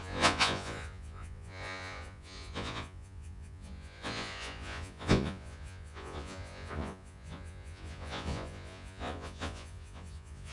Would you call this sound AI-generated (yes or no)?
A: yes